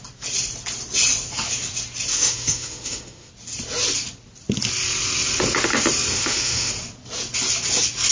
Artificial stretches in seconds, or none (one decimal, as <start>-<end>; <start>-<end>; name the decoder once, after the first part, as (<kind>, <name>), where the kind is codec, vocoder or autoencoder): 2.1-3.3 (autoencoder, DAC-VAE); 6.1-6.7